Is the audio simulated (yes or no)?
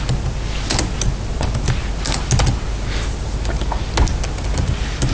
no